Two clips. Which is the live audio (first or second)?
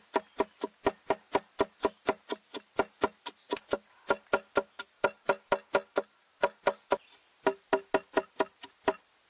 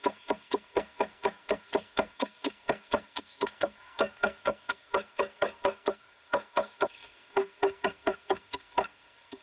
first